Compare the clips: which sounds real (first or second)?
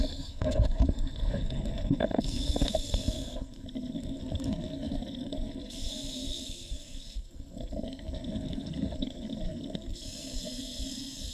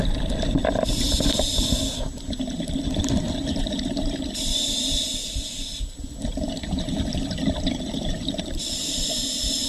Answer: second